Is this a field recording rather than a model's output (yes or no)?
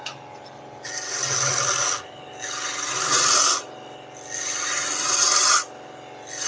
yes